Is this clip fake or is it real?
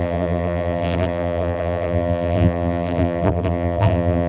fake